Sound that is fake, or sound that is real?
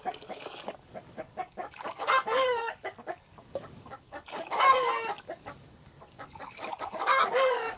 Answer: fake